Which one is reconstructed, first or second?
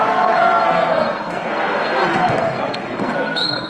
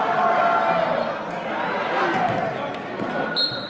first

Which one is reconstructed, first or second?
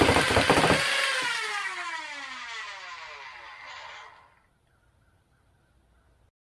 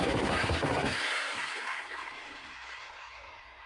second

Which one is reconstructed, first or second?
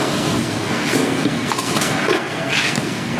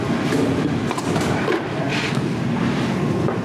first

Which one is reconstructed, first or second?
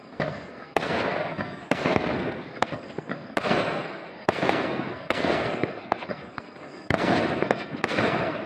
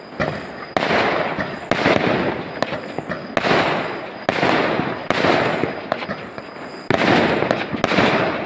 first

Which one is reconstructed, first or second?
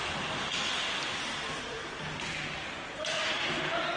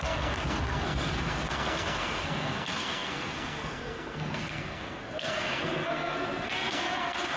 second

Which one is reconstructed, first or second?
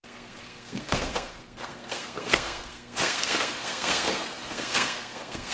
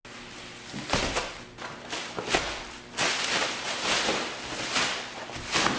first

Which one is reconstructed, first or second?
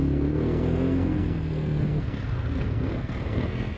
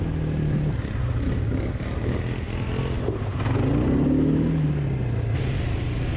first